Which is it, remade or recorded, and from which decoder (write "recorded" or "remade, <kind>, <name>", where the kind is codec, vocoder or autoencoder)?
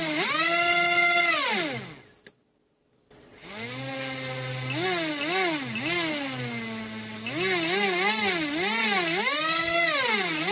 recorded